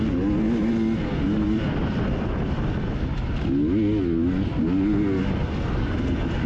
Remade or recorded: recorded